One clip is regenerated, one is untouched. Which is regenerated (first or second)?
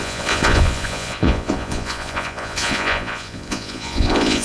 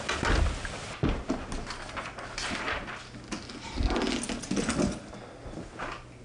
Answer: first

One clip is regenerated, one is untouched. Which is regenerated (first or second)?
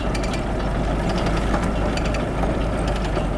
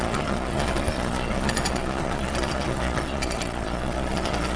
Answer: second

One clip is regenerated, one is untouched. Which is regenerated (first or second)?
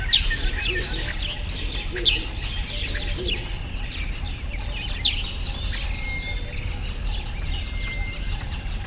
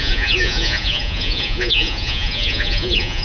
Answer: second